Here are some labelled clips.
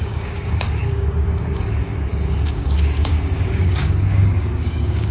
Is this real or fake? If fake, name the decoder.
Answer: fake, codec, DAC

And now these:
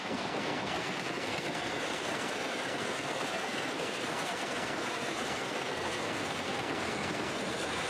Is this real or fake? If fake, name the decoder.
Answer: fake, codec, SNAC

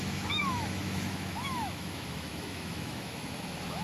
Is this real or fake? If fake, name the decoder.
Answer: fake, autoencoder, DAC-VAE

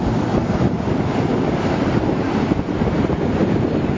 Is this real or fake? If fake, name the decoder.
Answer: real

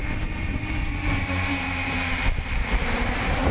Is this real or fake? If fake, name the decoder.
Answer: fake, vocoder, BigVGAN v2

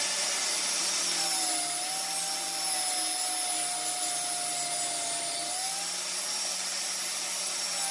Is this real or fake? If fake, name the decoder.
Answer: real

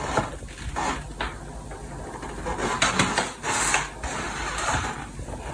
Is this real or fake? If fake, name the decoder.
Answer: real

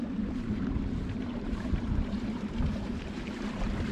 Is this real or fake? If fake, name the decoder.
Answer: fake, vocoder, BigVGAN v2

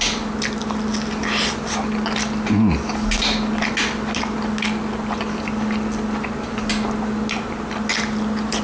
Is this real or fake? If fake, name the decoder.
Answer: real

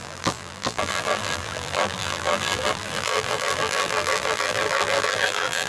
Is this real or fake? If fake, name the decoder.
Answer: fake, vocoder, BigVGAN v2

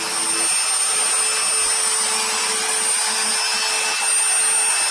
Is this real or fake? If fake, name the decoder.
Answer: real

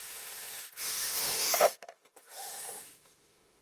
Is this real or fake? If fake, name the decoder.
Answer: fake, autoencoder, DAC-VAE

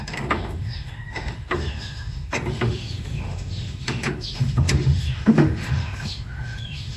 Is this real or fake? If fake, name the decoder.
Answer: fake, autoencoder, DAC-VAE